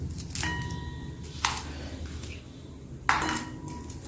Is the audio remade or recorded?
recorded